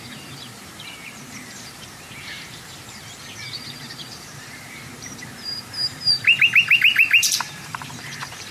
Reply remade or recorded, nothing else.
remade